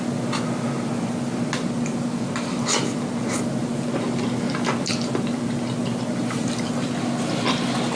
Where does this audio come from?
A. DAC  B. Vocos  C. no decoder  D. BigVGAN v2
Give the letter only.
C